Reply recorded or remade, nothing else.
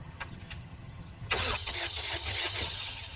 remade